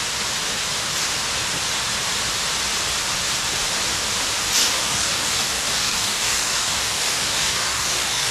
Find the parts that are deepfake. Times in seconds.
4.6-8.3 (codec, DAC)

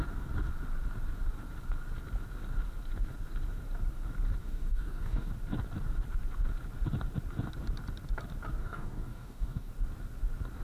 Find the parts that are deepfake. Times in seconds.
4.4-5.3 (codec, DAC); 8.6-9.7

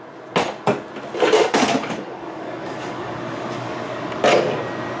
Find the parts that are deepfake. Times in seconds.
1.4-4.2 (codec, DAC)

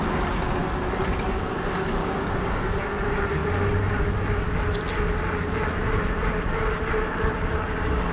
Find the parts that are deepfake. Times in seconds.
2.0-2.8 (codec, DAC)

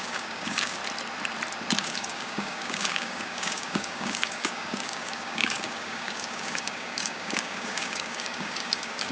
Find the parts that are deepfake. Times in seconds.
0.0-0.8 (codec, DAC); 1.8-9.1